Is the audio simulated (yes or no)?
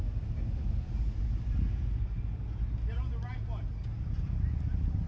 no